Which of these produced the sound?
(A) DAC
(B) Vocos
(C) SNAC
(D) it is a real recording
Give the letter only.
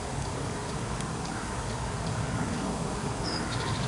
A